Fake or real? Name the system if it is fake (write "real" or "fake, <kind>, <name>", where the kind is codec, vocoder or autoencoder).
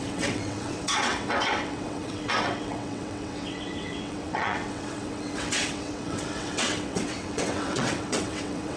fake, vocoder, WaveNeXt